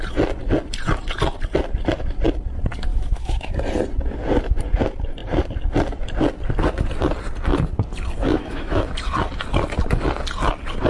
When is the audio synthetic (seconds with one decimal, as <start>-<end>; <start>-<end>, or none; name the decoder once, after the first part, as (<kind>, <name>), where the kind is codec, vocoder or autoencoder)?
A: 2.9-3.5 (autoencoder, DAC-VAE); 8.3-8.9